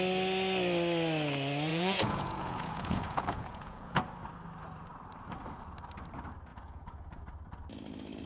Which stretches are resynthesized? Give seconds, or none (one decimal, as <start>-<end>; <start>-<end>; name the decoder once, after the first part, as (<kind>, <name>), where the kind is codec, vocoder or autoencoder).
1.7-4.0 (vocoder, Vocos); 6.5-7.2